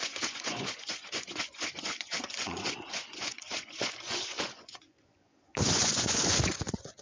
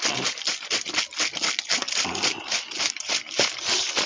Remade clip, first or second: first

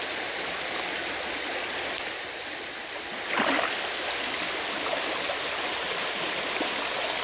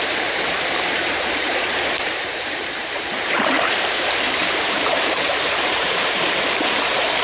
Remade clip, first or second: second